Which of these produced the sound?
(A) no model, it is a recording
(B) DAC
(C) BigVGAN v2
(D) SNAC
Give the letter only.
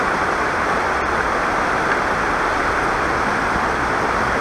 A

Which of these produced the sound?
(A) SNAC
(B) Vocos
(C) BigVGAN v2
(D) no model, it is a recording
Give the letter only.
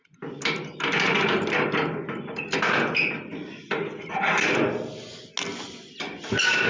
D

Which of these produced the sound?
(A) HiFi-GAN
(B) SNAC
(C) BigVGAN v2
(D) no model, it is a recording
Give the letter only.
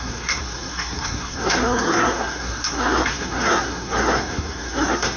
B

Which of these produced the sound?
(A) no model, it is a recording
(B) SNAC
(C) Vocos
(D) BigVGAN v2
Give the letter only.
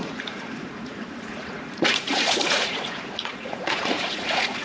C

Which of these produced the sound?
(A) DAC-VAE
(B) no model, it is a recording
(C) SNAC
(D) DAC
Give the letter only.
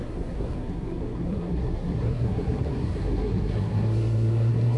C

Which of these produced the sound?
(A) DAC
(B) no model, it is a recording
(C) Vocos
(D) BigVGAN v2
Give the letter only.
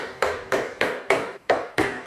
A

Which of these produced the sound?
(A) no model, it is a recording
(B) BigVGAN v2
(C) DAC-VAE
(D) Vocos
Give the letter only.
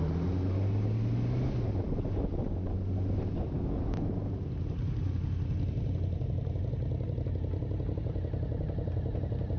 A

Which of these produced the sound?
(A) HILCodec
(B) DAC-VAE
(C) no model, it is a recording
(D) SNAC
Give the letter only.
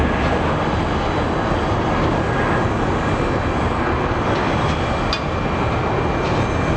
C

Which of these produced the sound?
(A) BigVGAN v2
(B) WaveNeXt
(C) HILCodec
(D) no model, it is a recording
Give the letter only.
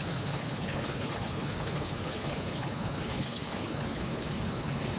C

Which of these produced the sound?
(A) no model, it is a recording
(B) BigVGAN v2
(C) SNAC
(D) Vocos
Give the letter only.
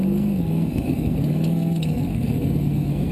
C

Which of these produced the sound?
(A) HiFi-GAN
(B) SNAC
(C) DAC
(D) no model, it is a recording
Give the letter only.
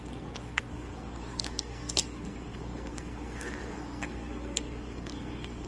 B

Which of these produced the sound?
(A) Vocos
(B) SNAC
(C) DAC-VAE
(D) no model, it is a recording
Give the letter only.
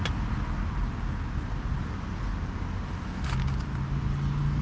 D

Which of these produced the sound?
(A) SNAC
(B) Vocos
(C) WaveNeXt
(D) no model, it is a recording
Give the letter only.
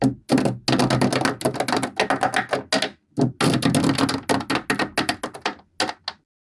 D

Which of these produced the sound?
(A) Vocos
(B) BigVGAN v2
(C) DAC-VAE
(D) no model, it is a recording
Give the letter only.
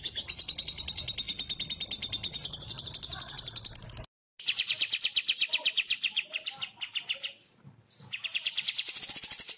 D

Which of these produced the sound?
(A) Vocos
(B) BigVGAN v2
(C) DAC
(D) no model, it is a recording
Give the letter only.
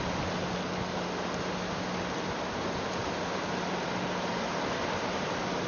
D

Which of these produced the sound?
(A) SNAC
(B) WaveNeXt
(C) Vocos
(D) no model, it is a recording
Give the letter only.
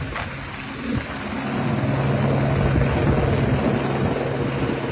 D